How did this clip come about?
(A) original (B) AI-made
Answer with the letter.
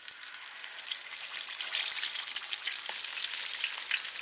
A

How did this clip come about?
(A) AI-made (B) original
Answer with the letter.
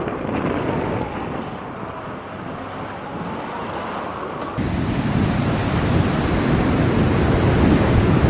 B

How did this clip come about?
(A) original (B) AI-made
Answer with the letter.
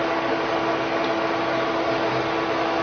A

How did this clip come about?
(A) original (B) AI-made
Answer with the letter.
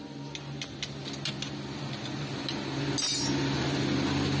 A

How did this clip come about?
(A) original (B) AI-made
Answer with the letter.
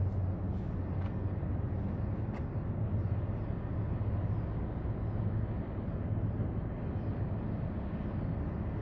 A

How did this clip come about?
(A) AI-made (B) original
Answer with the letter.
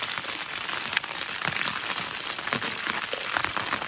B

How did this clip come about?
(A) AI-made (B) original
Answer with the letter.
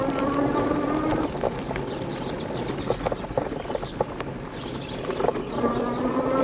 B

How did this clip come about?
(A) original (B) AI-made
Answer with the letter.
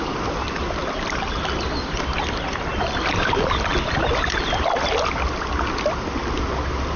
A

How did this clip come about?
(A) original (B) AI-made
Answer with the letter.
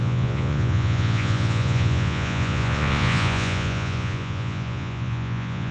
B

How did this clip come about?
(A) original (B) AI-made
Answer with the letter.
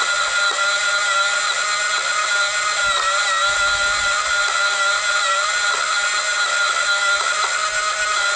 A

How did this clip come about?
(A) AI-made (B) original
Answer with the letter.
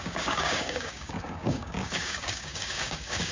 A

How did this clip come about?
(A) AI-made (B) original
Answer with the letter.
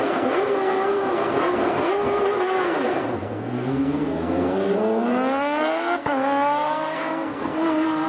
A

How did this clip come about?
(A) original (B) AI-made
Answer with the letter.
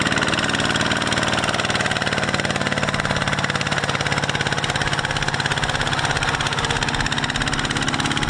A